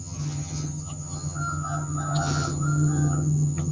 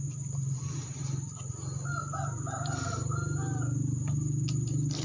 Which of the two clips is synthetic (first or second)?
first